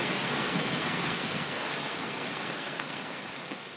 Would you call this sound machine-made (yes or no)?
yes